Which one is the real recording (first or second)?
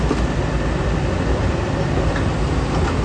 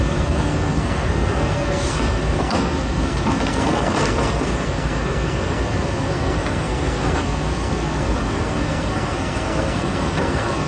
first